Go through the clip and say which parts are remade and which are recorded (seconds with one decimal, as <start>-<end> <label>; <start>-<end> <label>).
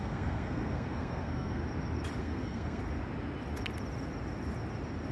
0.0-1.6 remade; 1.6-2.2 recorded; 2.2-2.8 remade; 2.8-5.1 recorded